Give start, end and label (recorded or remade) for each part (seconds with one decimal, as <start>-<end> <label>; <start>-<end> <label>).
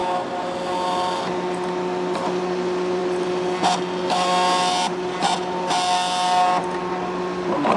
0.0-7.8 recorded